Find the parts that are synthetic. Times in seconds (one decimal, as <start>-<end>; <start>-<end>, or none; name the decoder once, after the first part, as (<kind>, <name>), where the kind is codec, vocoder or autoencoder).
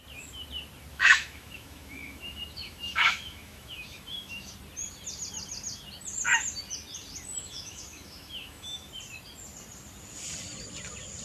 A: 0.9-4.5 (autoencoder, DAC-VAE); 7.4-8.9